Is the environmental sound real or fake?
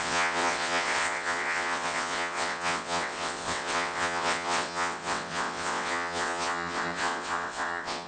fake